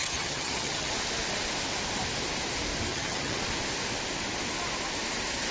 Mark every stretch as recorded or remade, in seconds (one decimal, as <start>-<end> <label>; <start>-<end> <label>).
0.0-0.9 remade; 0.9-2.9 recorded; 2.9-3.4 remade; 3.4-5.5 recorded